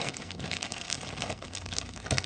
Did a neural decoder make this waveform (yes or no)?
yes